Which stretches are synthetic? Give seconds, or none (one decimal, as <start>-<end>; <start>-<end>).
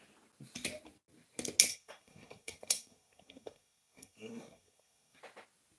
1.7-5.2